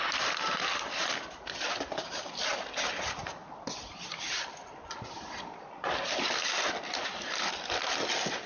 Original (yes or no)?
yes